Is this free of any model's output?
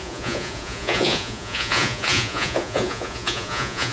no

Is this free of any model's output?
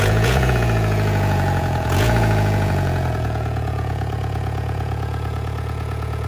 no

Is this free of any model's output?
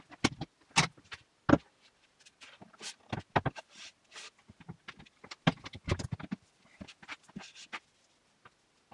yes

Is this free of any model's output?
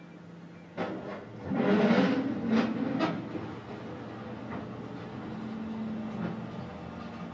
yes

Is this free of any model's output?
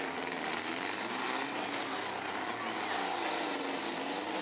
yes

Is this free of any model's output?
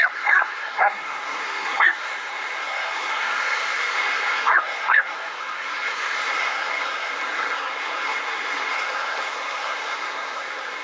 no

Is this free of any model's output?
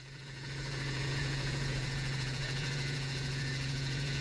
no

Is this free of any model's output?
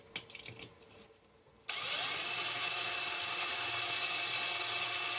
yes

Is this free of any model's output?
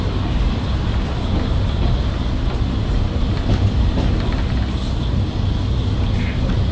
yes